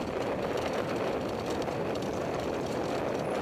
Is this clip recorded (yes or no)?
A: no